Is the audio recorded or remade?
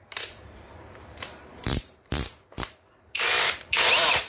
remade